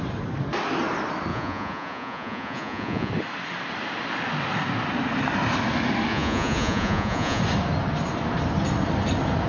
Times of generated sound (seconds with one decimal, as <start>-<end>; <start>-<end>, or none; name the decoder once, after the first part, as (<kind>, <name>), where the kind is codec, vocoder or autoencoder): 1.3-3.1 (vocoder, Vocos); 6.1-7.4